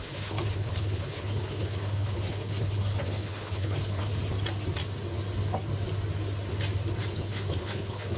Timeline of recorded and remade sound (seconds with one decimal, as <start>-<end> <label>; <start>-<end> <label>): 0.0-4.1 remade; 4.1-7.1 recorded; 7.1-8.2 remade